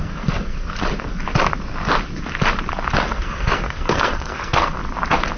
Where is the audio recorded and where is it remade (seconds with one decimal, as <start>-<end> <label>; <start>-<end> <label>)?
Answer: 0.0-0.8 remade; 0.8-3.0 recorded; 3.0-4.8 remade; 4.8-5.4 recorded